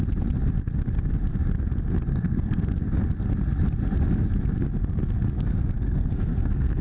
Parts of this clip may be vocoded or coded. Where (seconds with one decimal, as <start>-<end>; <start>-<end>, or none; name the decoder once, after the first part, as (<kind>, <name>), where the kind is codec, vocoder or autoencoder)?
2.1-2.8 (codec, SNAC); 4.8-6.8